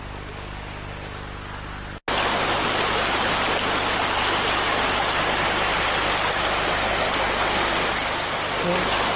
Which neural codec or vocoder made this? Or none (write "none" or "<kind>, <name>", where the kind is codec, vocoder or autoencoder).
none